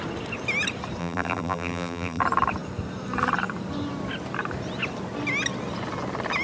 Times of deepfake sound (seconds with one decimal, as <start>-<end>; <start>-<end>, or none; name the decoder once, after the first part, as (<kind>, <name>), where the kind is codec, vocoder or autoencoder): 1.0-2.2 (vocoder, BigVGAN v2)